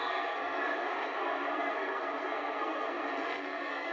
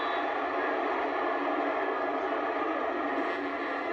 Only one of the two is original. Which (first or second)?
second